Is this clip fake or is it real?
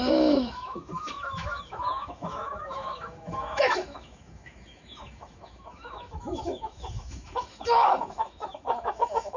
fake